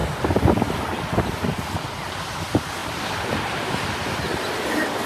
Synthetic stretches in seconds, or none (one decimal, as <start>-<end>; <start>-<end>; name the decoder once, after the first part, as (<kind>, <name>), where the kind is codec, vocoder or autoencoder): 0.0-0.8 (vocoder, BigVGAN v2)